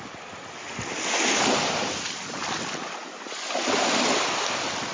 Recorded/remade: recorded